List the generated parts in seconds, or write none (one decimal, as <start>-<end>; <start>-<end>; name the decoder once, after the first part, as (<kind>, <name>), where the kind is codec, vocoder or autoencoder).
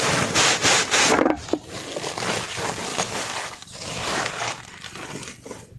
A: 2.9-4.6 (codec, DAC)